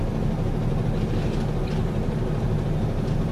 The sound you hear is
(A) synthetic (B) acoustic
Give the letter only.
B